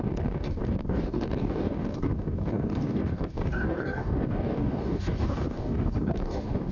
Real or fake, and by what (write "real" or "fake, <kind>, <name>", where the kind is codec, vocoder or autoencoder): fake, codec, DAC